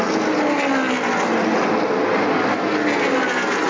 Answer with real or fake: real